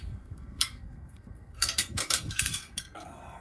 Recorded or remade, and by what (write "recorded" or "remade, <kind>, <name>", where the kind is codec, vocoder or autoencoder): remade, codec, SNAC